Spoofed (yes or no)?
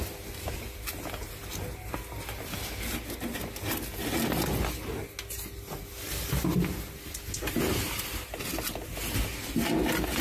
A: no